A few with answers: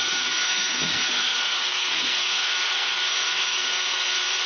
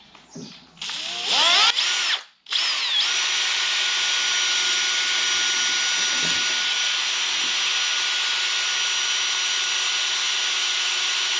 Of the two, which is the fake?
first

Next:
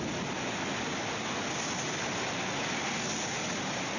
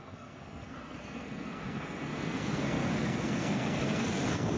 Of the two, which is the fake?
second